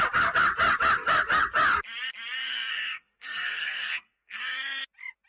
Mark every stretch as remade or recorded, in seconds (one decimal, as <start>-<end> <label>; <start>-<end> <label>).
0.0-2.7 recorded; 2.7-4.4 remade; 4.4-5.3 recorded